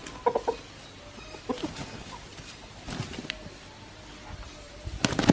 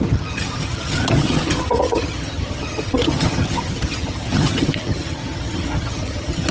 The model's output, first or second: second